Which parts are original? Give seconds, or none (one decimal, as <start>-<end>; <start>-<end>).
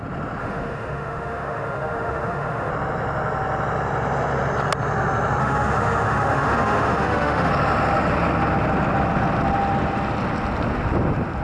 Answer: 0.0-0.4; 2.7-5.4; 7.5-11.4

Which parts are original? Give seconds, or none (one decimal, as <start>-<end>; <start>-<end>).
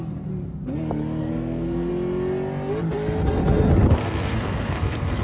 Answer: 0.0-1.2; 1.9-4.0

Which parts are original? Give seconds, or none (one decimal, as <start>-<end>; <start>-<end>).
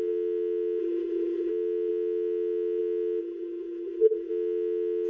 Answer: 0.0-0.8; 1.5-3.2; 4.3-5.1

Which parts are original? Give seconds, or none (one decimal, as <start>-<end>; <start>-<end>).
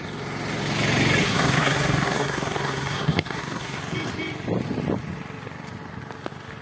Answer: 0.0-1.2; 3.8-6.6